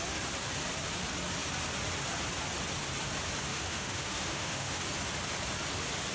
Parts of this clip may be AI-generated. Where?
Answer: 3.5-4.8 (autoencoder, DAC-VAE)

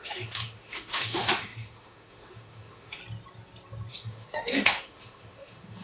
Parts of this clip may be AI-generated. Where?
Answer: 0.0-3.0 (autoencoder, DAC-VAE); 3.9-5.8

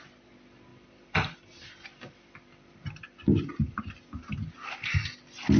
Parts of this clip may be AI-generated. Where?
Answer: 0.7-3.8 (vocoder, BigVGAN v2)

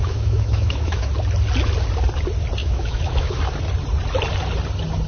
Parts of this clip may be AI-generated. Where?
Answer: 0.0-1.1 (autoencoder, DAC-VAE); 2.6-3.4

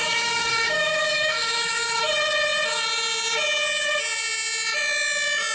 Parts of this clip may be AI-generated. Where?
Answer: 0.0-2.1 (autoencoder, DAC-VAE)

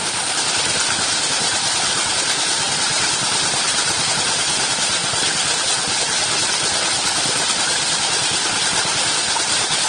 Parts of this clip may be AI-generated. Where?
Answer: 0.0-4.2 (vocoder, BigVGAN v2)

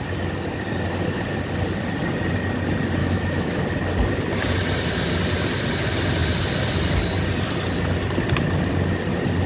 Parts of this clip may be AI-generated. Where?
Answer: 3.0-3.6 (autoencoder, DAC-VAE)

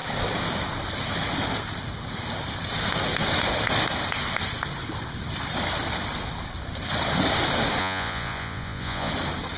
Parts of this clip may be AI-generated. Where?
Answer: 7.8-9.1 (vocoder, Vocos)